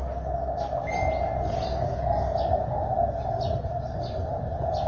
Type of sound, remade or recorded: recorded